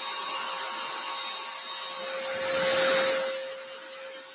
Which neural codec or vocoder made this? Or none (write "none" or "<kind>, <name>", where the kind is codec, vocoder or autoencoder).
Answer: none